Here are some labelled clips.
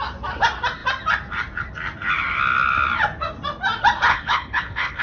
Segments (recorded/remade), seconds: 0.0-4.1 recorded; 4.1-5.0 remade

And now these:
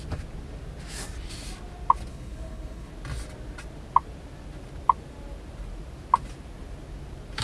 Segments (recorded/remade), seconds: 0.0-2.1 recorded; 2.1-2.9 remade; 2.9-7.4 recorded